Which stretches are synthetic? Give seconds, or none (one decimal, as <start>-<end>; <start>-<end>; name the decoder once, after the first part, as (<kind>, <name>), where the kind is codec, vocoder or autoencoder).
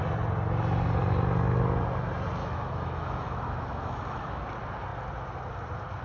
2.4-4.4 (autoencoder, DAC-VAE)